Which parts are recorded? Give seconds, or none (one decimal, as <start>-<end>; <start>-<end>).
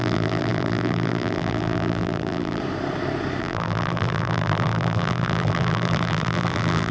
2.6-3.4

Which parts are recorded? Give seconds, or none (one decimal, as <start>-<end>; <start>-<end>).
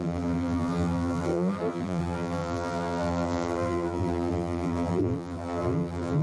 none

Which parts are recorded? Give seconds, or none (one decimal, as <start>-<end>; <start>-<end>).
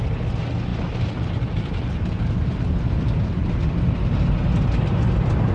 0.0-0.7; 2.3-5.5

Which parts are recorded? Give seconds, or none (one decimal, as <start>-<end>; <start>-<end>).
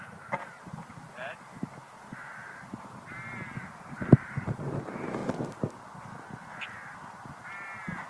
5.2-7.5